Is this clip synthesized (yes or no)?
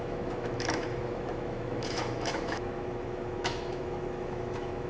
yes